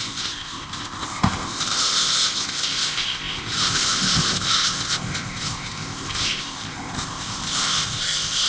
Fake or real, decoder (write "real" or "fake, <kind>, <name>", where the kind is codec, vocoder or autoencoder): fake, codec, ZipCodec